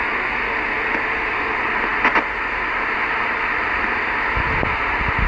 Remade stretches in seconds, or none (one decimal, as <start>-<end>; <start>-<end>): none